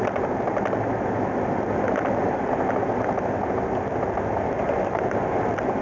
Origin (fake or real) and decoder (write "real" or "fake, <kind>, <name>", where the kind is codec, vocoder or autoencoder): real